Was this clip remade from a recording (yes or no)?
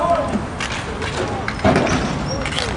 no